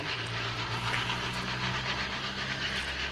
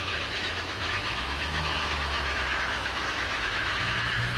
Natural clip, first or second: first